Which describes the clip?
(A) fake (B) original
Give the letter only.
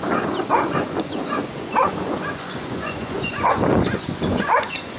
A